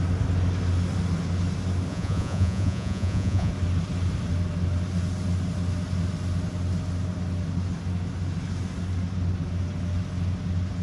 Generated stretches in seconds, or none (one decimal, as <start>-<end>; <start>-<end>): 1.9-3.5